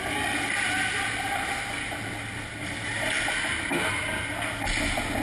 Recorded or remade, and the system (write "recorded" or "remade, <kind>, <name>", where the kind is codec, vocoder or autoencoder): recorded